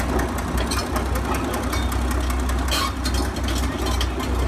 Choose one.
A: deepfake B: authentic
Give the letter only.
B